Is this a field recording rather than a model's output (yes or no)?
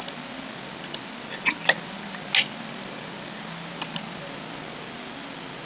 yes